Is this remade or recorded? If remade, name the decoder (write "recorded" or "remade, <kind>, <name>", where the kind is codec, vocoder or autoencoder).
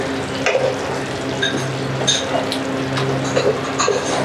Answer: recorded